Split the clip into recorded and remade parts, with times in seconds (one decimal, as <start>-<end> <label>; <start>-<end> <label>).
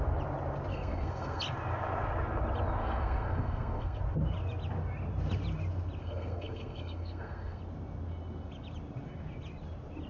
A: 0.0-0.7 recorded; 0.7-1.4 remade; 1.4-2.8 recorded; 2.8-4.0 remade; 4.0-6.0 recorded; 6.0-7.6 remade; 7.6-10.1 recorded